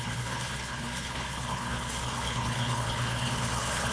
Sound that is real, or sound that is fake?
fake